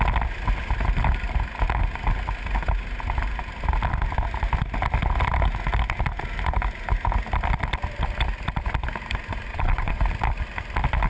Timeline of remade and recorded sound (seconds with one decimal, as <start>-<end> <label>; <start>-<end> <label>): 0.0-9.5 recorded; 9.5-10.0 remade; 10.0-11.1 recorded

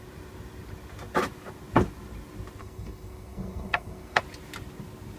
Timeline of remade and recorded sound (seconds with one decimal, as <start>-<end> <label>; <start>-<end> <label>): 0.0-2.6 recorded; 2.6-4.2 remade; 4.2-5.2 recorded

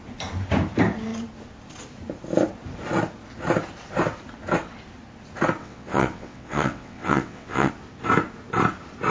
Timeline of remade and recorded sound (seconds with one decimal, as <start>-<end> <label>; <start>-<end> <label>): 0.0-5.6 recorded; 5.6-7.7 remade; 7.7-9.1 recorded

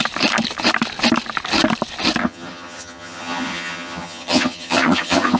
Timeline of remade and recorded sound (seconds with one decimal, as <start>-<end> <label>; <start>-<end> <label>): 0.0-2.2 recorded; 2.2-5.4 remade

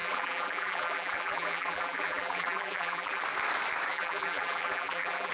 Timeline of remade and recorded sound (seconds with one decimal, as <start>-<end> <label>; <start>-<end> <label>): 0.0-3.2 remade; 3.2-3.9 recorded; 3.9-5.3 remade